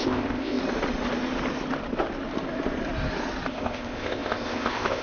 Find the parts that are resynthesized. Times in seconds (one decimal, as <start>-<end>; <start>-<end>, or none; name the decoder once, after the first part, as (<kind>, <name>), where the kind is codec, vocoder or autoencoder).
0.0-0.6 (codec, ZipCodec); 3.5-5.0